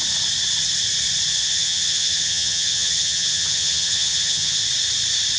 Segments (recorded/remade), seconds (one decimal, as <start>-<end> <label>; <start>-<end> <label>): 0.0-1.4 recorded; 1.4-4.6 remade; 4.6-5.4 recorded